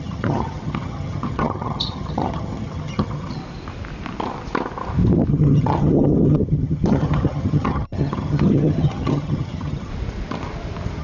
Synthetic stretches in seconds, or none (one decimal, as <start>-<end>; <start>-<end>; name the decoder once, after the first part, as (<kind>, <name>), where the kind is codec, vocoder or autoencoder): 0.0-3.4 (vocoder, HiFi-GAN); 5.3-9.9